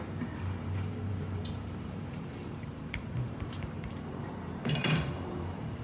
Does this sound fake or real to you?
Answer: fake